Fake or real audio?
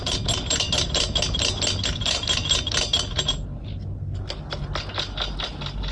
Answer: real